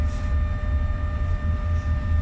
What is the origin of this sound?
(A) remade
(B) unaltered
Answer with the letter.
B